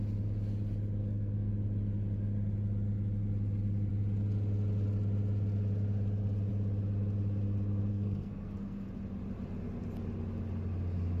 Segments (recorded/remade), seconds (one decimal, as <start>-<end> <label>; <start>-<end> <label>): 0.0-1.0 recorded; 1.0-1.5 remade; 1.5-7.9 recorded; 7.9-8.9 remade; 8.9-11.2 recorded